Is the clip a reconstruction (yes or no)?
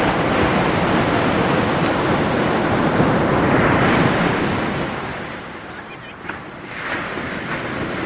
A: yes